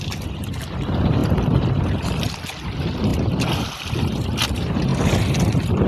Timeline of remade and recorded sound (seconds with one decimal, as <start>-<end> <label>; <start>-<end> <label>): 0.0-5.9 recorded